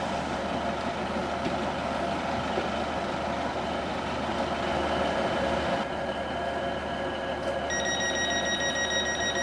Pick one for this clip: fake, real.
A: real